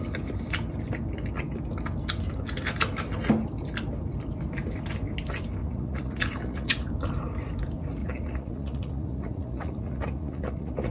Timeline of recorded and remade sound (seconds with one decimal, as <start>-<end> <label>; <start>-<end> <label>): 0.0-5.6 recorded; 5.6-6.9 remade; 6.9-8.0 recorded; 8.0-10.9 remade